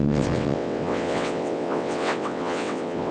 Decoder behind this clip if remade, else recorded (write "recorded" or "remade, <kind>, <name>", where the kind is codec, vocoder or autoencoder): remade, vocoder, WaveNeXt